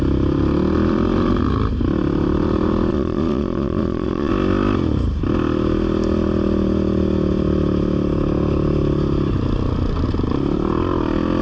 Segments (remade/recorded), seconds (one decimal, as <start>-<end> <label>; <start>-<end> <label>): 0.0-2.9 recorded; 2.9-4.3 remade; 4.3-11.4 recorded